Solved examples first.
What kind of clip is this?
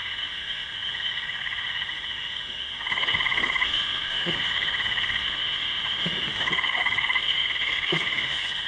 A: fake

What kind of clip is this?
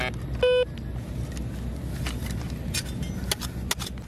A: real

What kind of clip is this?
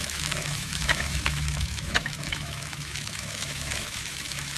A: fake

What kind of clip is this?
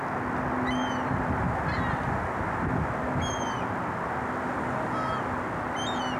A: real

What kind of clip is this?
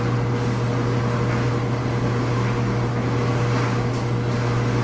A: real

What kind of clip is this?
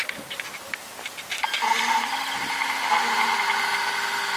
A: real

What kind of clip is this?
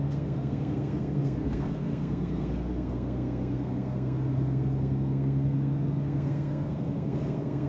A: fake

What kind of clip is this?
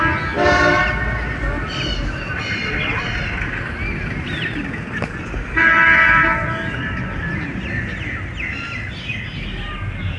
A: real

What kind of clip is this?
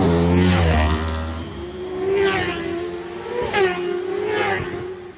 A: real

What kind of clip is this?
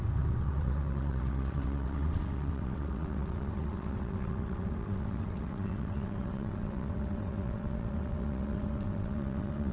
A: fake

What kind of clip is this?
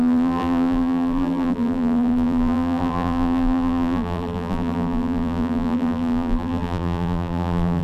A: fake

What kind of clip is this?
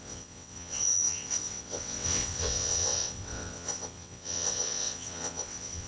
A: fake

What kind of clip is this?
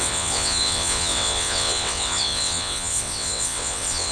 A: fake